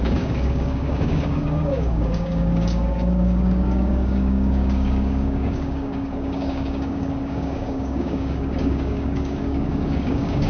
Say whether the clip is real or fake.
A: fake